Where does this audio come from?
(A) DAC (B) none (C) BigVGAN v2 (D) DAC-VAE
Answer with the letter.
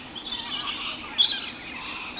B